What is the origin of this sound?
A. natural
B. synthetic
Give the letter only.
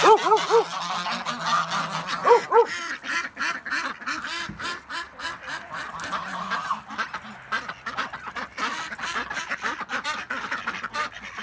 A